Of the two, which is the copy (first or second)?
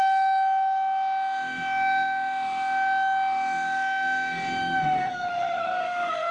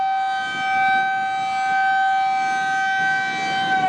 first